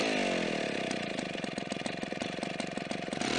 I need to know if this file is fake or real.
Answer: real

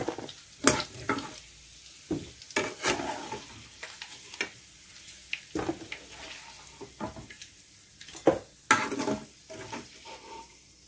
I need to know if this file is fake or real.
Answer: real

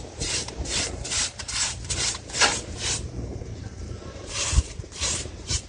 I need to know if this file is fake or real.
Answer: fake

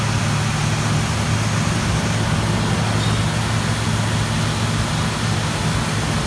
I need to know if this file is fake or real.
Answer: real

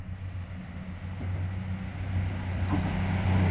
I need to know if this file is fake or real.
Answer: real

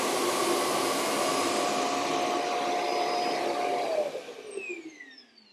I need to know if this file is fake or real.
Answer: real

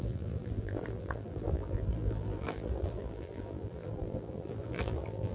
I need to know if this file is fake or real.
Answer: fake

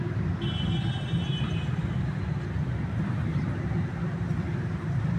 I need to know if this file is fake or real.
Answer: fake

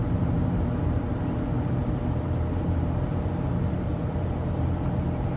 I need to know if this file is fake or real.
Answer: fake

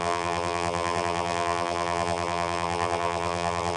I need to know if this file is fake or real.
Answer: fake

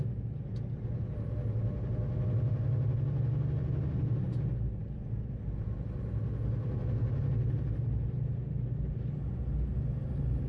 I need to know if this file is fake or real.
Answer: real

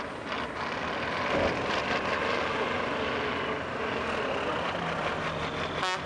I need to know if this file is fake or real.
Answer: real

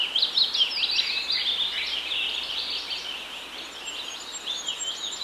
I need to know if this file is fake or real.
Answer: real